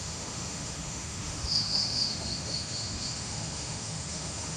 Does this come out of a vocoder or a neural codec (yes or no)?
yes